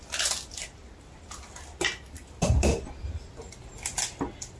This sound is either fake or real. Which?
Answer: real